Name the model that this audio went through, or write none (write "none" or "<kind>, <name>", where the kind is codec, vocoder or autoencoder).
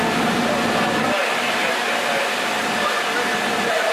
none